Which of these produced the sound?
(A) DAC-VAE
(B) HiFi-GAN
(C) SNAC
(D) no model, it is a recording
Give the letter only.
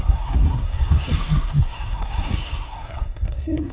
C